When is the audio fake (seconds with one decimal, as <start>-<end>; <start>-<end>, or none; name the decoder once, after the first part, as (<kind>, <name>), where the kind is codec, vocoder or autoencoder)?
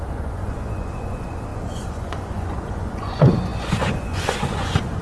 0.0-5.0 (vocoder, Vocos)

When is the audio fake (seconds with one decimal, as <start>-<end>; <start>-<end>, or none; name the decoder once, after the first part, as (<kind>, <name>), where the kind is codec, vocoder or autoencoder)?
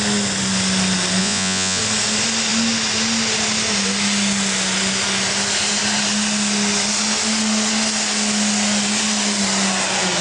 1.2-1.8 (vocoder, Vocos)